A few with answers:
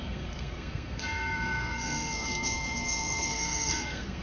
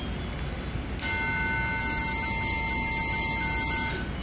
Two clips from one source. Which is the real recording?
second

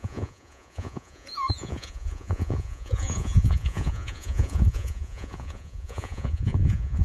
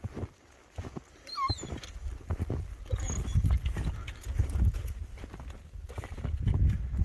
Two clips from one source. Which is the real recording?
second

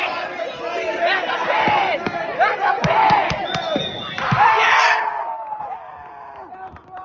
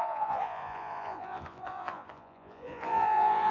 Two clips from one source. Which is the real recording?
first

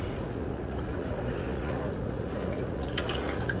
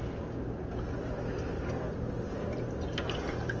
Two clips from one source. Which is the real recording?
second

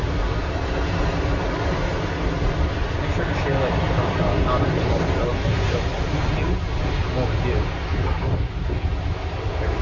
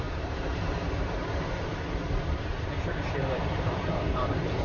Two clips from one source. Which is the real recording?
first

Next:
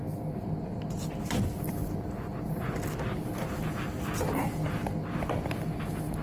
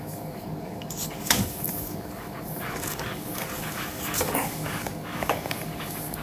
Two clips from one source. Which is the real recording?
first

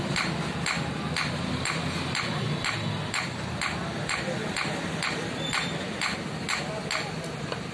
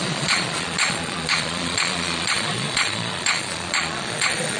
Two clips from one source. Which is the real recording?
first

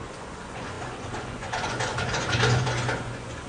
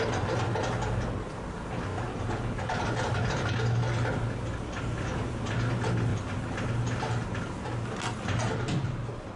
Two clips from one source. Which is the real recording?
second